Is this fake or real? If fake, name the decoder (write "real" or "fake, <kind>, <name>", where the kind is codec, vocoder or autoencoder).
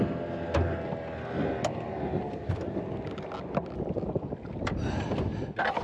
real